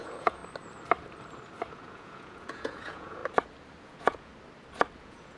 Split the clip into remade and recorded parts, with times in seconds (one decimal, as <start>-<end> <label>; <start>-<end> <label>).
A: 0.0-0.4 remade; 0.4-1.7 recorded; 1.7-3.2 remade; 3.2-3.8 recorded; 3.8-4.3 remade; 4.3-5.0 recorded; 5.0-5.4 remade